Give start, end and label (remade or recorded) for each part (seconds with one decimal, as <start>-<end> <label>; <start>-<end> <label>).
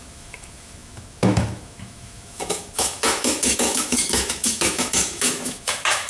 0.0-6.1 remade